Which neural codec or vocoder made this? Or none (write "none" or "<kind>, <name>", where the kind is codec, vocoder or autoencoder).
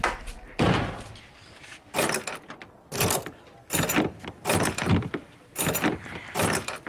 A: none